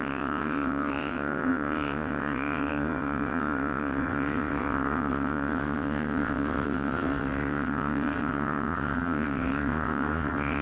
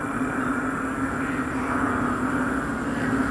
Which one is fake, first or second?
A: first